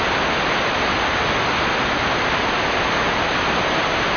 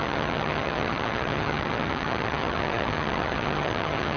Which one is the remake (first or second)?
second